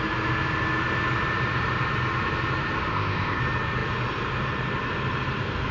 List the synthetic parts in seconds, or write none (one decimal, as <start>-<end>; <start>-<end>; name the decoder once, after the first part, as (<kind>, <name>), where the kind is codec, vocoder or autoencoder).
2.9-3.4 (codec, ZipCodec)